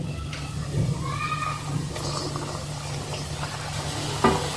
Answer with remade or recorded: recorded